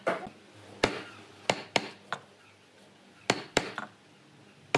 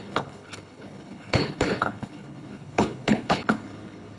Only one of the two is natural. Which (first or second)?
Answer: first